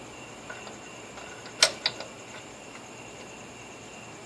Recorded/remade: recorded